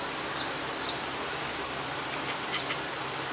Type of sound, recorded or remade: recorded